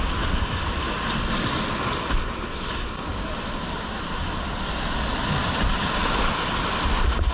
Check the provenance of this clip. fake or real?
real